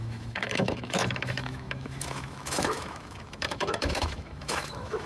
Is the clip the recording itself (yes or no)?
no